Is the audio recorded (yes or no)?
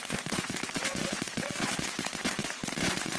no